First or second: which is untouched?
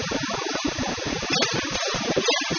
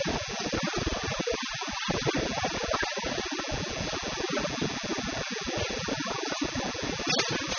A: second